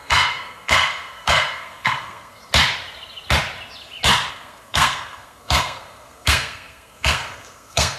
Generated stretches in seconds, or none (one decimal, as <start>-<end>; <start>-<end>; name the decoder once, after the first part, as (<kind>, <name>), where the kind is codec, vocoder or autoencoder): 0.0-2.4 (codec, SNAC); 4.3-8.0